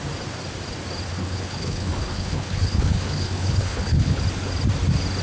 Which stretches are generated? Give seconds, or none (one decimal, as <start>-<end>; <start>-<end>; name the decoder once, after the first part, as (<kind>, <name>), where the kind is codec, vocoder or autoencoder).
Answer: 1.1-4.2 (codec, HILCodec)